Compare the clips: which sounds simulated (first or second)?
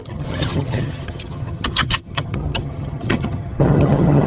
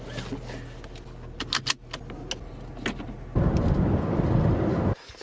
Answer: first